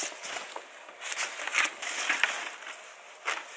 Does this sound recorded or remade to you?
recorded